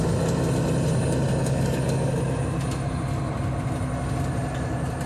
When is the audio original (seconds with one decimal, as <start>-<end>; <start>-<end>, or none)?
0.0-1.4; 2.1-5.1